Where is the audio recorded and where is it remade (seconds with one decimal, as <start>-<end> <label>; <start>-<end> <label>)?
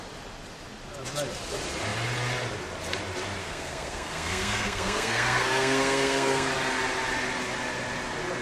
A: 0.0-3.4 recorded; 3.4-6.5 remade; 6.5-8.4 recorded